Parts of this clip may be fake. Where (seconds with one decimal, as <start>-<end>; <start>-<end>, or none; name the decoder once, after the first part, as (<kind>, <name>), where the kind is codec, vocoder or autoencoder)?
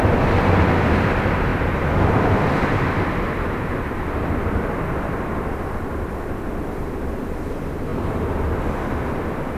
none